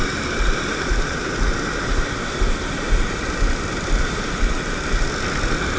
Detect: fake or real real